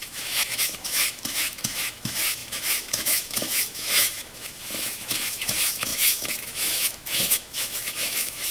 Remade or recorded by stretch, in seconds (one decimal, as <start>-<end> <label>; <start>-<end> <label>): 0.0-8.5 remade